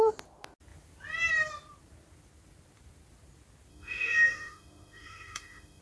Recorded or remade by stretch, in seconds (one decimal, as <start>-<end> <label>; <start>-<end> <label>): 0.0-3.7 recorded; 3.7-5.8 remade